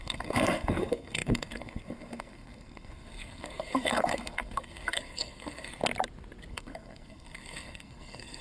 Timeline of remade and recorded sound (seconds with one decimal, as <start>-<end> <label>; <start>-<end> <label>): 0.0-5.8 remade; 5.8-6.5 recorded; 6.5-8.4 remade

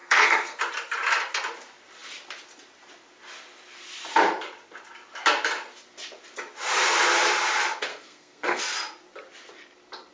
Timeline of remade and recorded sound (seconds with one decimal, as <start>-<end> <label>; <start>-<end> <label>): 0.0-0.6 remade; 0.6-7.9 recorded; 7.9-8.6 remade; 8.6-10.1 recorded

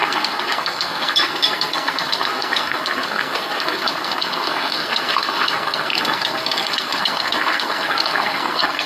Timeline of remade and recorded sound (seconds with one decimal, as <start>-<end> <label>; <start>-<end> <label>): 0.0-8.9 remade